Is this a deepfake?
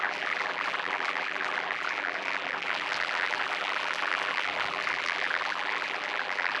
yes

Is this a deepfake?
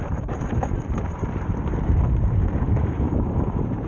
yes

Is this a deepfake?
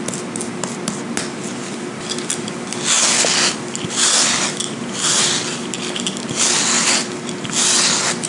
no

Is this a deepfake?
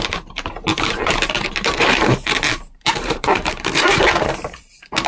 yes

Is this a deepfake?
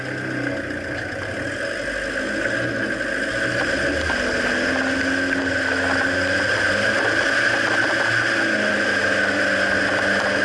no